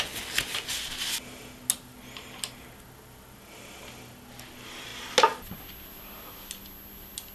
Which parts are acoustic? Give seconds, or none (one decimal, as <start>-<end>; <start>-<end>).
0.0-7.3